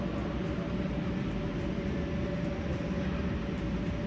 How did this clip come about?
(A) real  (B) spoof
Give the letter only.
A